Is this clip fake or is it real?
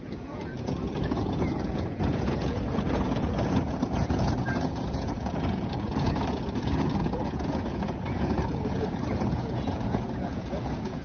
fake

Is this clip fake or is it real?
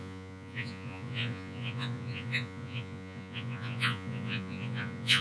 fake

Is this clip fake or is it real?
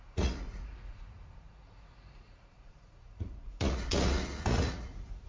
fake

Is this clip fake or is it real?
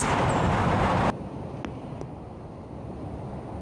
real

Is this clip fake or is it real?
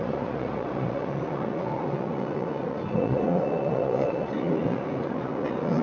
fake